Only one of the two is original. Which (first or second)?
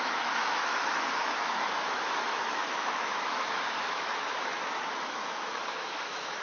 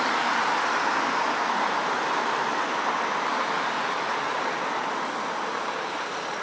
second